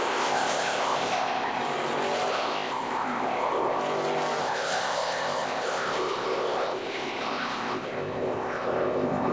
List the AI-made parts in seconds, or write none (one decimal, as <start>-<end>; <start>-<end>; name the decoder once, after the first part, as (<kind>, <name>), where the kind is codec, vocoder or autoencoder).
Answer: 0.0-1.6 (codec, ZipCodec); 2.3-3.8; 4.4-9.3